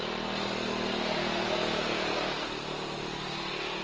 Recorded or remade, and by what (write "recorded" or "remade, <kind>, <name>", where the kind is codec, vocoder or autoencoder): recorded